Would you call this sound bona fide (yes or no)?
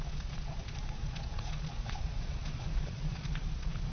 no